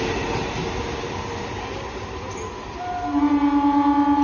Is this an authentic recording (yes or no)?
yes